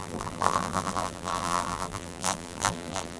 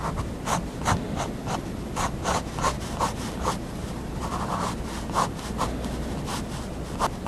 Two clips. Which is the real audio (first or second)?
second